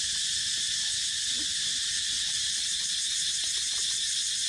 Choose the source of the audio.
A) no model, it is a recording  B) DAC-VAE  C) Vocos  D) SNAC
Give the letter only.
A